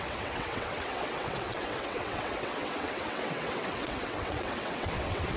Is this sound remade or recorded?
remade